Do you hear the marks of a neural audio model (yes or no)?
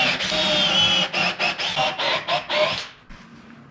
no